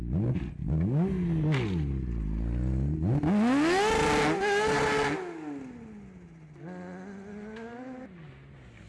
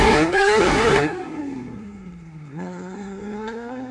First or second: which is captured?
first